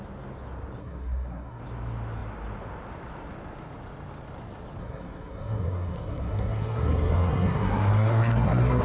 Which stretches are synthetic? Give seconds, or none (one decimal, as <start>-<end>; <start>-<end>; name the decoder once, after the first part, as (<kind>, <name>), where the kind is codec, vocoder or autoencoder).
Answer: 0.8-1.6 (codec, SNAC); 4.8-8.8